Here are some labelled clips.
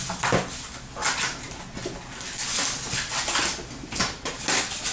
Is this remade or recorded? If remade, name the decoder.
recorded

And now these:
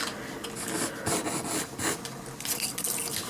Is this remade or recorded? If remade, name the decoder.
recorded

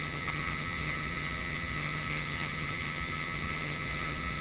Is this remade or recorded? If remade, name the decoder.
remade, vocoder, HiFi-GAN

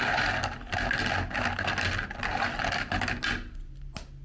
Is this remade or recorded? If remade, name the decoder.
recorded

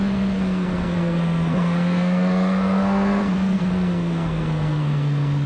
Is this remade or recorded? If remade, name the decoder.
remade, codec, SNAC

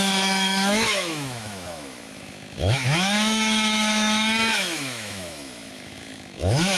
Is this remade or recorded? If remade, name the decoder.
remade, autoencoder, DAC-VAE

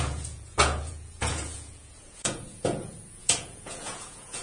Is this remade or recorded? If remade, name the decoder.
remade, vocoder, Vocos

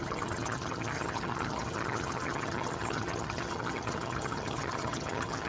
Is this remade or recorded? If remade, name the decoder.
remade, vocoder, HiFi-GAN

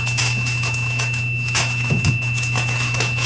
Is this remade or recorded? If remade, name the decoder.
remade, autoencoder, DAC-VAE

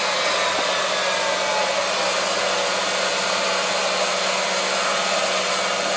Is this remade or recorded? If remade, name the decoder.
recorded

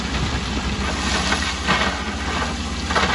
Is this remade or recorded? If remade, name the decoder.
recorded